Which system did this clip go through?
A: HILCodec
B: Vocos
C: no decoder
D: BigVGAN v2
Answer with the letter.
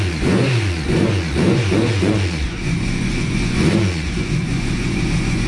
B